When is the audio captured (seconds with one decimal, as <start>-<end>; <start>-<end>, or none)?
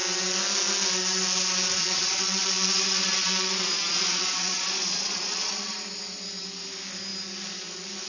0.0-1.8; 5.7-8.1